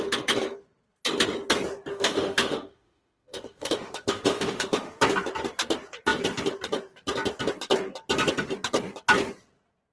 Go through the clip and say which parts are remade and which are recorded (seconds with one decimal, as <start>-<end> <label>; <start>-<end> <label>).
0.0-1.9 recorded; 1.9-5.0 remade; 5.0-9.9 recorded

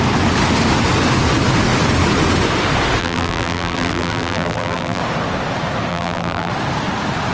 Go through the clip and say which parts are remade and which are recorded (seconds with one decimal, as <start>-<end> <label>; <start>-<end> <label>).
0.0-3.0 recorded; 3.0-5.0 remade; 5.0-5.9 recorded; 5.9-6.5 remade; 6.5-7.3 recorded

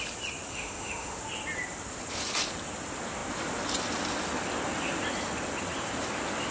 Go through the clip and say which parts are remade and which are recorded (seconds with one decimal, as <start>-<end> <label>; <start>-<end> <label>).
0.0-0.5 recorded; 0.5-1.2 remade; 1.2-6.5 recorded

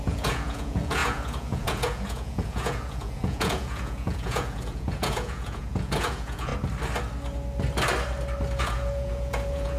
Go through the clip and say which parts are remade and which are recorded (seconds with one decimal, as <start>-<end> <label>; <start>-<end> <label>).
0.0-6.5 remade; 6.5-8.6 recorded; 8.6-9.8 remade

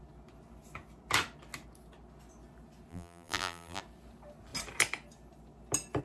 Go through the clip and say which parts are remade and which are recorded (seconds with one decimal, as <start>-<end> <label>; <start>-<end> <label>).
0.0-2.9 recorded; 2.9-3.8 remade; 3.8-6.0 recorded